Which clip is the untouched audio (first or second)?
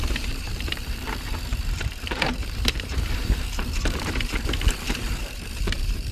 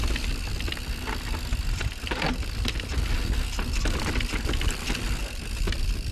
second